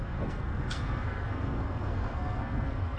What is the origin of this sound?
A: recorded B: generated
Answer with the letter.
B